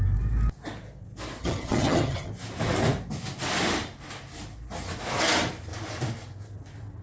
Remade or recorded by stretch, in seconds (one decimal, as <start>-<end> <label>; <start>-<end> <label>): 0.0-1.4 recorded; 1.4-2.3 remade; 2.3-7.0 recorded